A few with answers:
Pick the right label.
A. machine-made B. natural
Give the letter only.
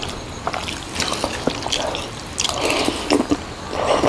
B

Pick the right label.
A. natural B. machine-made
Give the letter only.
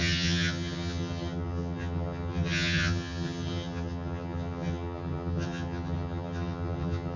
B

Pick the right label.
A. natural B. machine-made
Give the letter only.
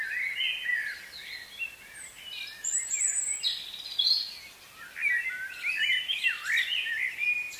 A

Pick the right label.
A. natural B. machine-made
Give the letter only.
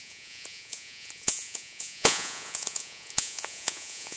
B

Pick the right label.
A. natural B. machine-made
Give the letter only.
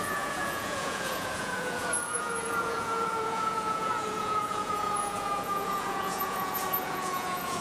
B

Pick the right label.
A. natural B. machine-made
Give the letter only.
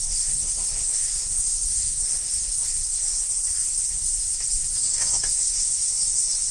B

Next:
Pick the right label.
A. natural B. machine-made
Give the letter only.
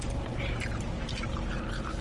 A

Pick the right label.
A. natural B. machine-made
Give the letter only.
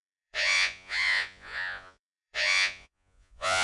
B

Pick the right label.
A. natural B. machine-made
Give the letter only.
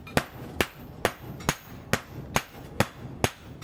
A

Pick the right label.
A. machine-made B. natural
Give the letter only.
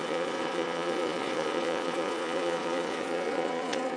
A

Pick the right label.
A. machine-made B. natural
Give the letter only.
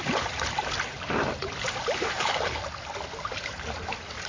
A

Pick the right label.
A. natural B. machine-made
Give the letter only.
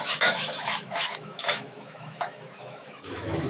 B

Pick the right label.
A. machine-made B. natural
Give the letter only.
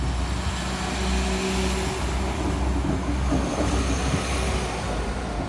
B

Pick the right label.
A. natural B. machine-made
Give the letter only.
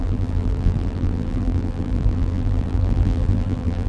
B